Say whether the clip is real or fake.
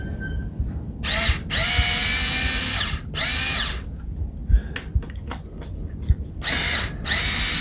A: real